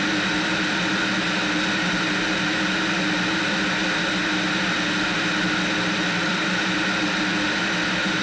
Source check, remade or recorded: recorded